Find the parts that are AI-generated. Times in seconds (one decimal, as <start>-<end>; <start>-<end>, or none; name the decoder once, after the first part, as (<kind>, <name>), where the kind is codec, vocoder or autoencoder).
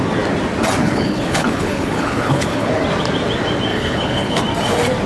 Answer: 0.8-2.8 (codec, HILCodec); 3.7-4.4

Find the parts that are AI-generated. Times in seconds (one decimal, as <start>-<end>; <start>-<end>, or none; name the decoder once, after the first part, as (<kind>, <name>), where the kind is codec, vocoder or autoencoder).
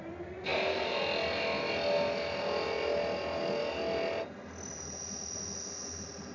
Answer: none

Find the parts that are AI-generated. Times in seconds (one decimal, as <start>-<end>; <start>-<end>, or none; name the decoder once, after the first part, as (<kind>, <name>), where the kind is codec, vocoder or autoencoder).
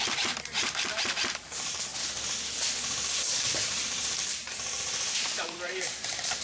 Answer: 0.0-1.9 (vocoder, BigVGAN v2); 3.3-6.4